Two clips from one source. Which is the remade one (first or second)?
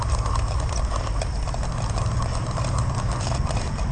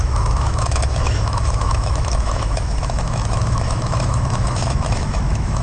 second